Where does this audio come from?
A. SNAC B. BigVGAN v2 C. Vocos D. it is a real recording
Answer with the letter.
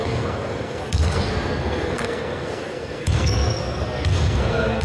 A